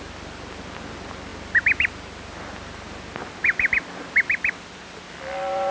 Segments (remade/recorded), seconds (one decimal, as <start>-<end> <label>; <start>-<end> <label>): 0.0-5.7 recorded